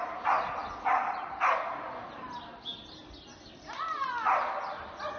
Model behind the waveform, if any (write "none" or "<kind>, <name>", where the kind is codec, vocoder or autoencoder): none